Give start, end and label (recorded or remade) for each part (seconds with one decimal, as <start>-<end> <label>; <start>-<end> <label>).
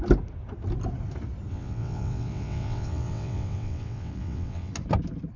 0.0-1.5 recorded; 1.5-4.7 remade; 4.7-5.4 recorded